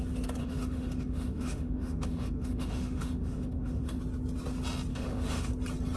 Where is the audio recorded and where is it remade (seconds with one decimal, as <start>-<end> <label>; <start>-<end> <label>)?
0.0-0.4 recorded; 0.4-4.0 remade; 4.0-4.9 recorded; 4.9-5.5 remade; 5.5-6.0 recorded

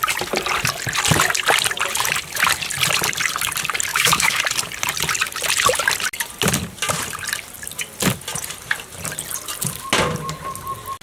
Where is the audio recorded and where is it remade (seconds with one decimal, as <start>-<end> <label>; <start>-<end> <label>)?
0.0-3.9 recorded; 3.9-4.4 remade; 4.4-11.0 recorded